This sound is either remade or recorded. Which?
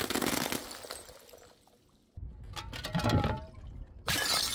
recorded